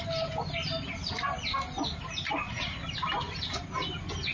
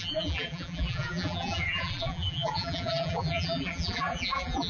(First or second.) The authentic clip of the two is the first